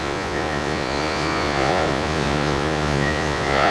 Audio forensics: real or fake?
fake